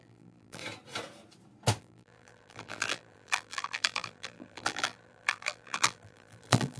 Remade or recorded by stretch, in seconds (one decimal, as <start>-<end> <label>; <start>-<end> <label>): 0.0-0.6 remade; 0.6-1.8 recorded; 1.8-6.8 remade